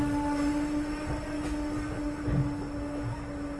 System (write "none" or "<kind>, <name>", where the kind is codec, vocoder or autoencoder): none